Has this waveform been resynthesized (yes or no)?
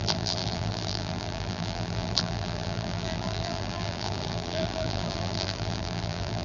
yes